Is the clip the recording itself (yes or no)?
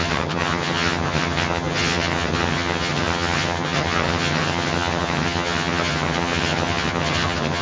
no